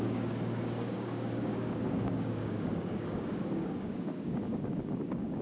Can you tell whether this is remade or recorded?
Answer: remade